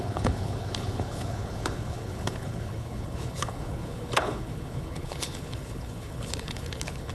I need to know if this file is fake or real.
fake